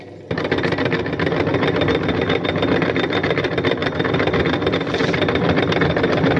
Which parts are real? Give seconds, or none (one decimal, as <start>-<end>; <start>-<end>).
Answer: 0.0-1.5; 2.1-5.0